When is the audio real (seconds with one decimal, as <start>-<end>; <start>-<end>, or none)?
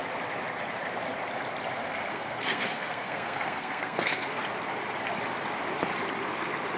0.0-2.1; 4.4-6.8